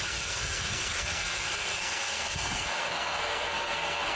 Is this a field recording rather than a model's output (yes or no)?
no